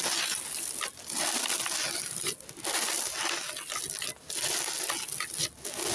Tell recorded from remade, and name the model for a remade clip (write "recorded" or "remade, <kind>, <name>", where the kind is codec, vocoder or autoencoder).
recorded